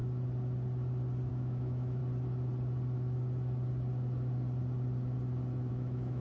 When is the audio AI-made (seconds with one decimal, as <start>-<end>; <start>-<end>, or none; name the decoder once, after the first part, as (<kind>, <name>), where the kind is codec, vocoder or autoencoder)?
1.3-2.0 (autoencoder, DAC-VAE); 5.7-6.2